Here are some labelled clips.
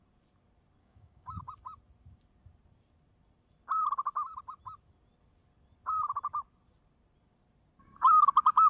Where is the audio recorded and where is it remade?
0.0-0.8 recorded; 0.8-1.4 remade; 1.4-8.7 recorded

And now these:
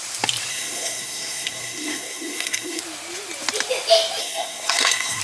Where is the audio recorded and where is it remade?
0.0-0.5 recorded; 0.5-2.8 remade; 2.8-4.2 recorded; 4.2-5.2 remade

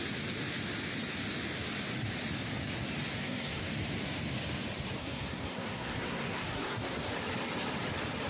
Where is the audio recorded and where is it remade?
0.0-3.0 recorded; 3.0-3.6 remade; 3.6-5.0 recorded; 5.0-7.1 remade; 7.1-8.3 recorded

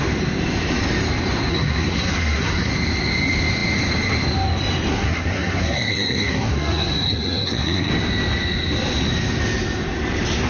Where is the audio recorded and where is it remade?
0.0-1.5 recorded; 1.5-2.7 remade; 2.7-4.9 recorded; 4.9-7.9 remade; 7.9-10.5 recorded

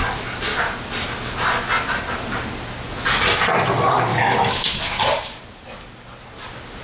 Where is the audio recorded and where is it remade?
0.0-4.1 recorded; 4.1-5.0 remade; 5.0-6.8 recorded